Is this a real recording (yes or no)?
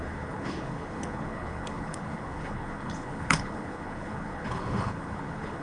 no